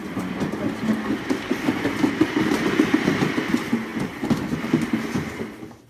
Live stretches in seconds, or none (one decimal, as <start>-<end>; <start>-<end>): 0.0-3.5